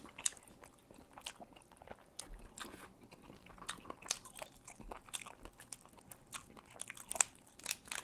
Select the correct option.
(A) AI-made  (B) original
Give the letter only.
B